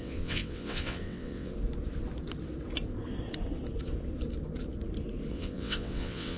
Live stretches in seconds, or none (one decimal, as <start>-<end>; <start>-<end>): 1.5-5.3